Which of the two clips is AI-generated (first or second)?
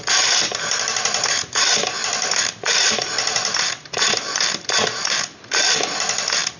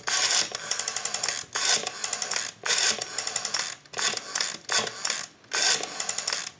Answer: first